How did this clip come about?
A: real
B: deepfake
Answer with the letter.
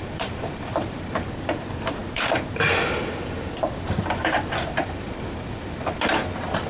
B